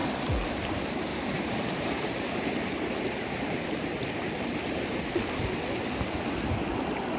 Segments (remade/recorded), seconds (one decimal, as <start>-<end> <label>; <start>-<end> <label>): 0.0-1.1 recorded; 1.1-5.4 remade; 5.4-7.2 recorded